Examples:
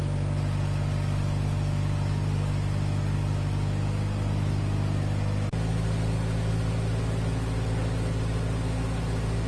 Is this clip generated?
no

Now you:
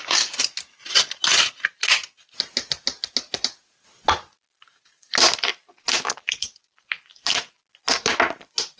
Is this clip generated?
no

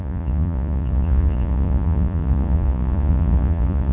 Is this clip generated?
yes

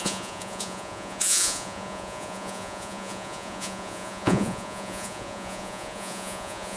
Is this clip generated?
yes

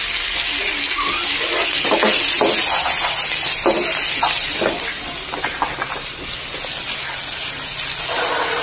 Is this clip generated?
no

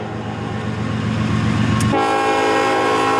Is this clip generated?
no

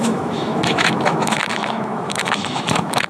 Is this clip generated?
yes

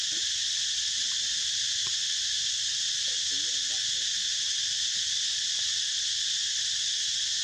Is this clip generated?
no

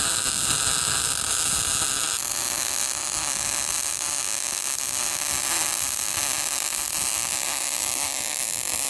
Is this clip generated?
no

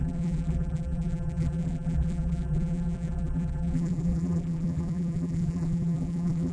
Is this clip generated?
yes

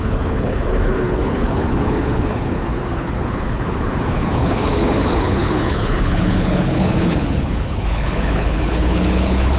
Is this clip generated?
yes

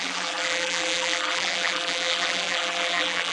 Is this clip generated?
yes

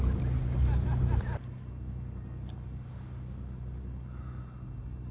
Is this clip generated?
no